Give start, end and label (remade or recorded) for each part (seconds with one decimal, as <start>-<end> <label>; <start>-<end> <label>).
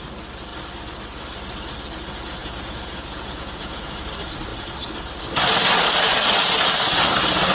0.0-2.4 recorded; 2.4-4.1 remade; 4.1-7.5 recorded